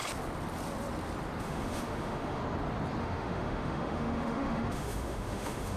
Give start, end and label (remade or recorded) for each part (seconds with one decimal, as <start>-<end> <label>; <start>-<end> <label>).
0.0-1.4 recorded; 1.4-2.4 remade; 2.4-3.0 recorded; 3.0-5.8 remade